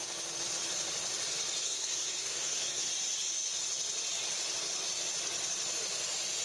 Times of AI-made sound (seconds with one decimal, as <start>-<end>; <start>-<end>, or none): 1.6-2.9